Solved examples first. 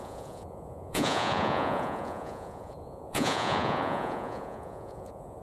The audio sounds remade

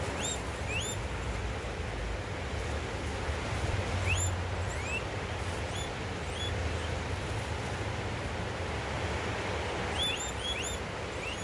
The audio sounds recorded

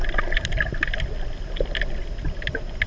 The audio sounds recorded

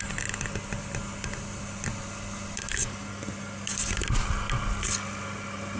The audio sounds recorded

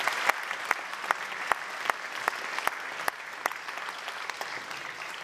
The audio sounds recorded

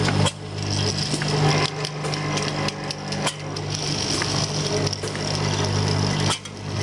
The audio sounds recorded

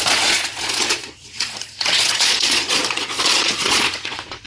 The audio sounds remade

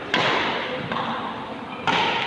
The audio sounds recorded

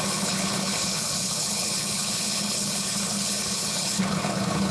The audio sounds remade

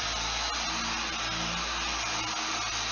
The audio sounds recorded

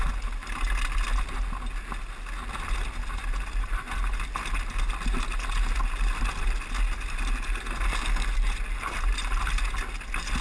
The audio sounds recorded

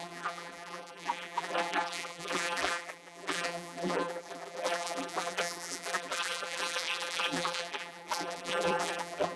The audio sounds remade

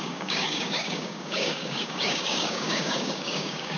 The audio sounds remade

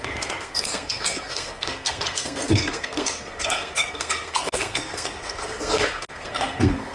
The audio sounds remade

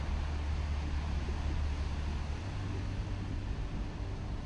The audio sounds recorded